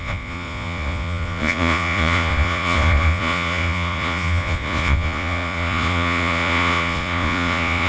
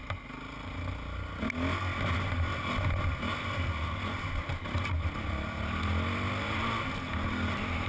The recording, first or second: second